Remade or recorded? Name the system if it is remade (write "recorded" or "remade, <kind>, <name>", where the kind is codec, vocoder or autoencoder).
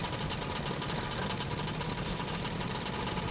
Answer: recorded